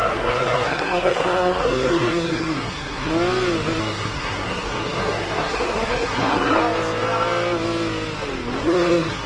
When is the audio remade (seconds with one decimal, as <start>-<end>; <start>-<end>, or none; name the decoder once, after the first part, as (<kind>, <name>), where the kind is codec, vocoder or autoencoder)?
0.0-3.1 (codec, SNAC); 3.8-6.6; 8.6-9.3

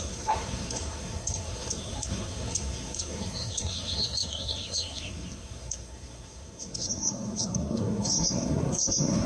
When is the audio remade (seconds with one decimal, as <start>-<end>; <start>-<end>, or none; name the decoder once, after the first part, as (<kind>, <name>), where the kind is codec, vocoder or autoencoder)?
0.0-9.3 (codec, SNAC)

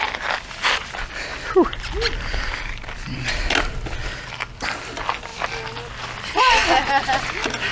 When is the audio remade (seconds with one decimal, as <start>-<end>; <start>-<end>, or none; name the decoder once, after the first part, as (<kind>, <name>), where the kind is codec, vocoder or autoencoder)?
none

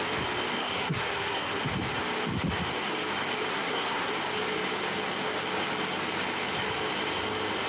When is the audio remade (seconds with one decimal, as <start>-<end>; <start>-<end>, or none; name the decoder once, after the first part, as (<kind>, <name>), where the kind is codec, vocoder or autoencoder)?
0.6-1.6 (codec, SNAC); 3.5-4.1